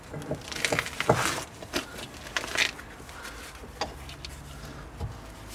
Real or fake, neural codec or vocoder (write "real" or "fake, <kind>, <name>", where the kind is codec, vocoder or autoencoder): real